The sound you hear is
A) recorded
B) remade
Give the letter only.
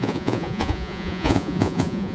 B